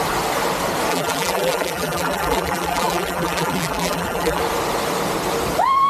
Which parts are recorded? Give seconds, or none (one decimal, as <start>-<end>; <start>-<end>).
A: 0.0-0.9; 4.4-5.9